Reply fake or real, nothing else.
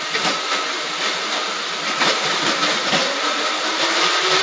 fake